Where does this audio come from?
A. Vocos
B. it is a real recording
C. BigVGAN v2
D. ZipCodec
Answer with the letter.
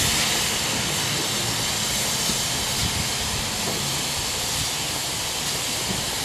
B